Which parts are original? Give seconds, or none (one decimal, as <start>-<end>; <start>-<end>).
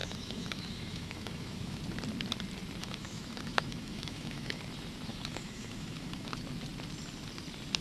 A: 1.8-2.8; 4.6-5.1; 6.3-7.8